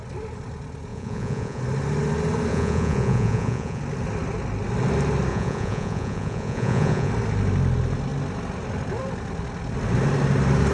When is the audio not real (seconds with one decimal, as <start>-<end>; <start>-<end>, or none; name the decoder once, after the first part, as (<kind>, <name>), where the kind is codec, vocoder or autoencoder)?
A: 0.9-1.6 (vocoder, Vocos); 2.5-3.8; 5.3-7.1